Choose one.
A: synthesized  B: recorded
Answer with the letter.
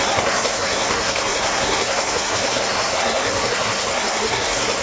A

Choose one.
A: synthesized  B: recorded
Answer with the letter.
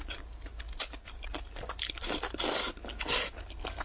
B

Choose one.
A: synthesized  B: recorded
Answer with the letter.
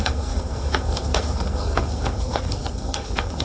A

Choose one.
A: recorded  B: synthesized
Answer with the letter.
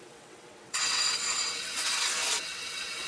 B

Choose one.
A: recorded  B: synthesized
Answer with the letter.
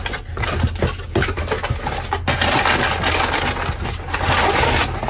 A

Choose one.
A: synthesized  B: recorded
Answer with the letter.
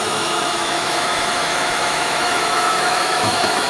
A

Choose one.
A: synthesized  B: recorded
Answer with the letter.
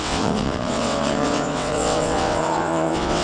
A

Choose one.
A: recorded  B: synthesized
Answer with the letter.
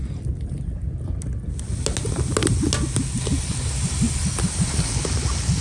A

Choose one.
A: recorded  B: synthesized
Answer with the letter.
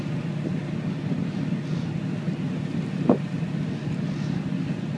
A